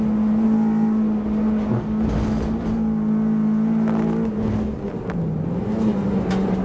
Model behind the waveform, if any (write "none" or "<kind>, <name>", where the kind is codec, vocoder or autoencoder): none